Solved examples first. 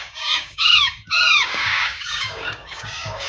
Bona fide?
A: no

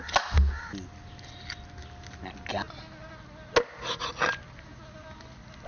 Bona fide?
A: yes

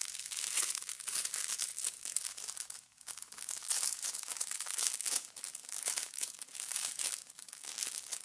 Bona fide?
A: no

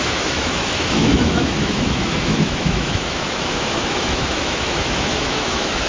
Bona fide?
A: no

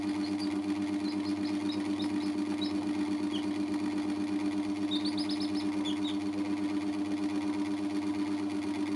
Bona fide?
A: yes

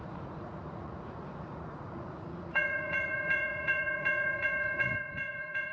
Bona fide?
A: no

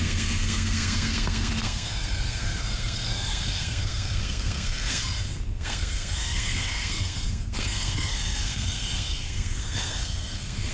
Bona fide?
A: no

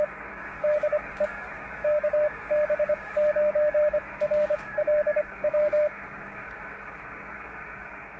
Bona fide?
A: no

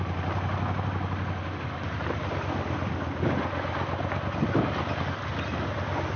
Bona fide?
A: yes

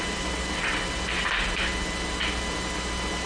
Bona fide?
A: yes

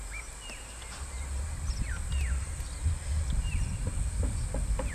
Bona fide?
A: yes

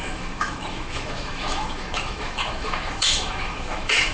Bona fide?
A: no